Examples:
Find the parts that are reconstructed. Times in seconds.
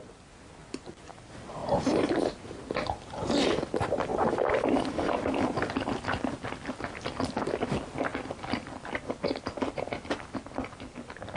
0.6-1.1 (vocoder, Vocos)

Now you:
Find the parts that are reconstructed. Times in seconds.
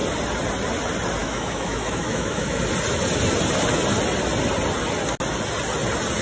1.2-2.6 (autoencoder, DAC-VAE)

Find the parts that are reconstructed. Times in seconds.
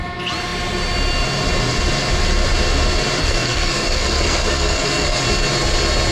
3.2-5.2 (codec, SNAC)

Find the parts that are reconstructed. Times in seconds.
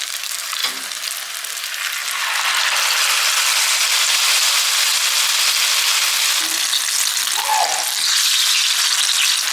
none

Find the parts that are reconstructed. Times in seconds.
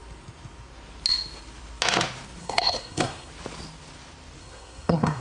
2.4-3.3 (codec, SNAC); 4.4-5.2